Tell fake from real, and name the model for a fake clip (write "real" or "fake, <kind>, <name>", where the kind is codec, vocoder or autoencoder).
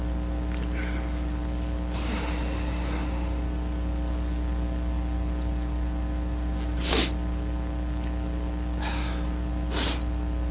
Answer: real